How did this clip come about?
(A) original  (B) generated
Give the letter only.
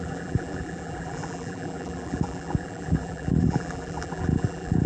B